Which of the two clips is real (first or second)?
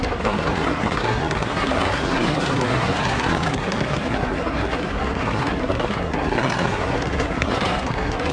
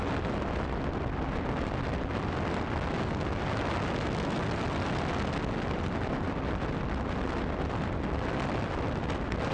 second